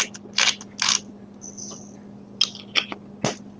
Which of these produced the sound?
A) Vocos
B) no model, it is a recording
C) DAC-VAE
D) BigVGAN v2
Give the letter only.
B